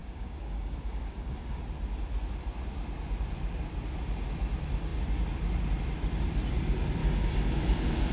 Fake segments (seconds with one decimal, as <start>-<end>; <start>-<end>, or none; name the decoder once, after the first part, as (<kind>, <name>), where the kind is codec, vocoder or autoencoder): 0.0-1.6 (codec, DAC); 7.0-8.1